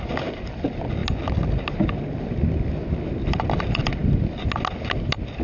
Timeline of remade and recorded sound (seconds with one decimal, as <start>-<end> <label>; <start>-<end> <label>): 0.0-5.4 recorded